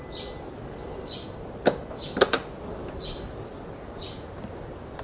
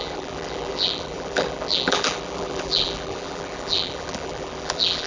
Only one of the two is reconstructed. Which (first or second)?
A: second